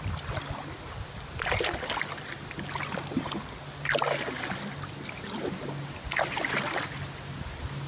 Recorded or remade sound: recorded